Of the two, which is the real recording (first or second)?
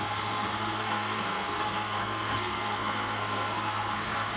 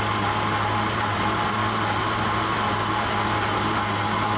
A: second